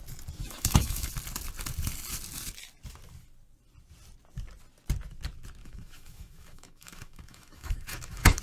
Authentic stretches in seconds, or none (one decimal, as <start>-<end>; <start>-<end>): 0.0-0.4; 1.1-5.6